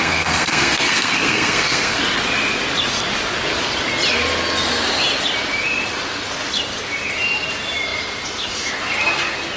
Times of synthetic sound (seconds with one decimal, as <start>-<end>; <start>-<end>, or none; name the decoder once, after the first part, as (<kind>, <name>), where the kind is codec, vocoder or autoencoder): 0.0-2.0 (codec, SNAC)